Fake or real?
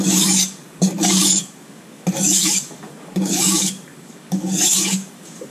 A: fake